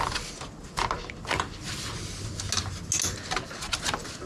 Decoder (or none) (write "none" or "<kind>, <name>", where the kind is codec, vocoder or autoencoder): none